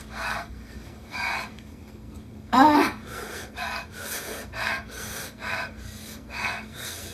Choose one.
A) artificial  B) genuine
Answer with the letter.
A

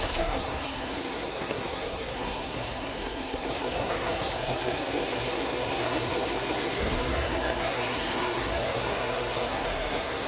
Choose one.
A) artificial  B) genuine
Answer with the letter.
A